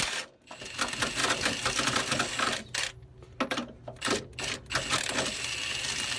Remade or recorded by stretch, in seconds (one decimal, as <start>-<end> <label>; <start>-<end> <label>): 0.0-6.2 recorded